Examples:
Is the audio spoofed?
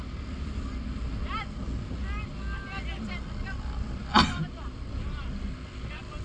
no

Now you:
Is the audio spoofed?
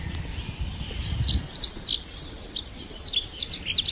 no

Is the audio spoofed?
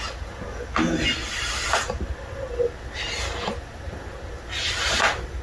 no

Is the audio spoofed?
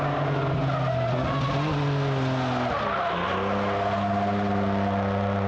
no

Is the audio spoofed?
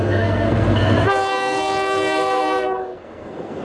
yes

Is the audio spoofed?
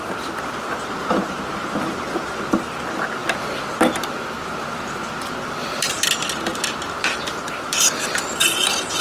no